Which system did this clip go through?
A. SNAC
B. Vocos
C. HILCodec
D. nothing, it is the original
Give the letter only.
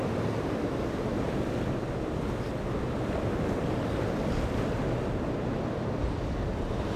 D